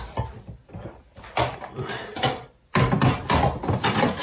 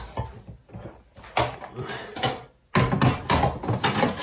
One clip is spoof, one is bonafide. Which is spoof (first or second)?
first